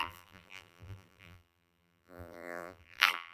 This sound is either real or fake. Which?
fake